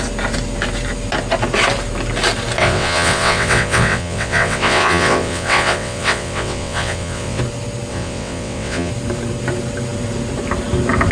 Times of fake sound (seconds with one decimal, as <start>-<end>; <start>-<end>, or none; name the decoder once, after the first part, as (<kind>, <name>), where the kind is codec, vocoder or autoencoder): 2.6-7.4 (vocoder, WaveNeXt); 7.9-8.9